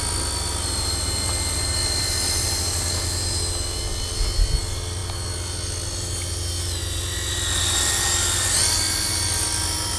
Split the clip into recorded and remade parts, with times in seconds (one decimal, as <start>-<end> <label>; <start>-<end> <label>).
0.0-10.0 recorded